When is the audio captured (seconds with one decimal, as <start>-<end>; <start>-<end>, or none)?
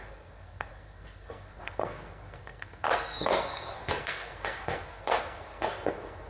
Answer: none